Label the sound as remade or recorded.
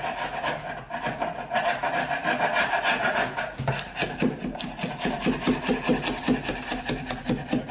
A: recorded